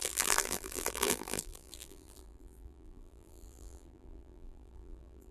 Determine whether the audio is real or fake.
fake